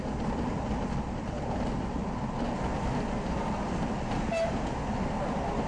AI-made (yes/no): no